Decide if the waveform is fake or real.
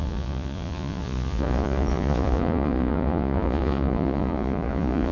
fake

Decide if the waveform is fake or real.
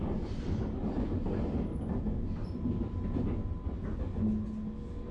real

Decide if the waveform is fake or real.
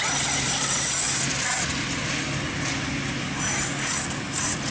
real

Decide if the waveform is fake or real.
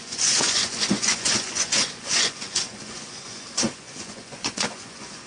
fake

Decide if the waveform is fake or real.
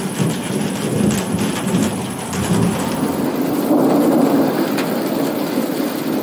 real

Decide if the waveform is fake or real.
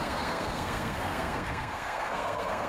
fake